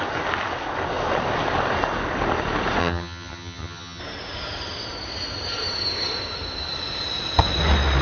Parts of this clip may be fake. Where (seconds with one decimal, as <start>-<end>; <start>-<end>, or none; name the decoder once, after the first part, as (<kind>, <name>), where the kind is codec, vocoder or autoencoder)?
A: 2.8-4.0 (vocoder, HiFi-GAN)